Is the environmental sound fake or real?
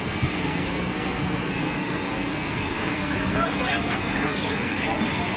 fake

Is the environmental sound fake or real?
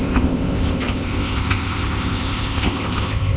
fake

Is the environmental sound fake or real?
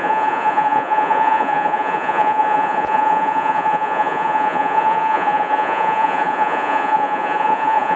fake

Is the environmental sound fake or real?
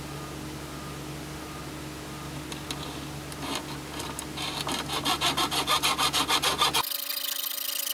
real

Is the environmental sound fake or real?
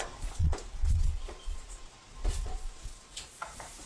fake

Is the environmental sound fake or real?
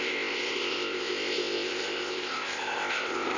fake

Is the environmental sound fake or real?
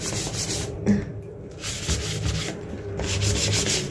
real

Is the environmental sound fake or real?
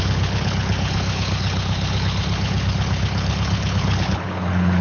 fake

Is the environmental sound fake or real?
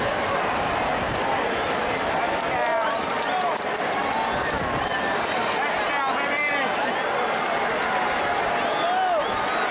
real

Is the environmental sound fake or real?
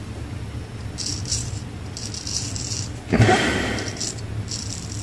real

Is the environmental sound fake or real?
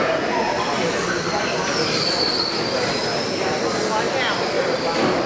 real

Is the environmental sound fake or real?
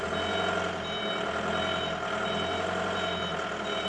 real